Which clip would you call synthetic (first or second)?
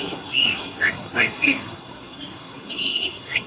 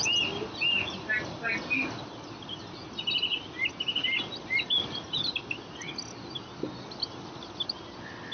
first